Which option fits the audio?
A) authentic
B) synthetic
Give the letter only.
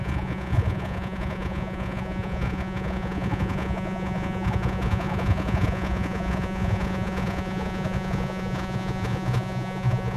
B